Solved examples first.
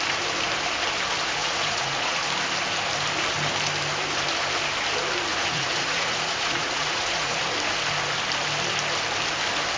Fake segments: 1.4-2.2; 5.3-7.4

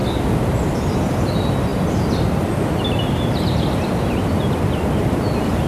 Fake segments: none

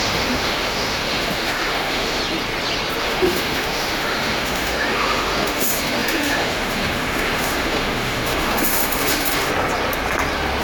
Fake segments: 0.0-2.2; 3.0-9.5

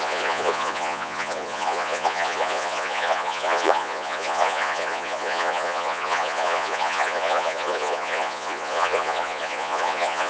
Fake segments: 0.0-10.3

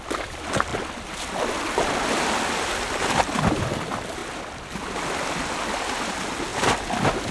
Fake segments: none

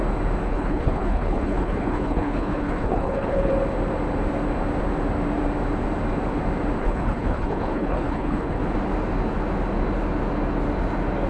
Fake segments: 0.5-3.5; 6.8-8.6